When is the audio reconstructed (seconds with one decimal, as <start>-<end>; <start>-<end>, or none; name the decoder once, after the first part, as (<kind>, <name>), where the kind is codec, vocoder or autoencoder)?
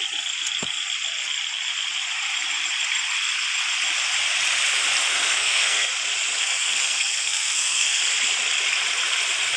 5.1-5.9 (codec, SNAC); 6.4-8.0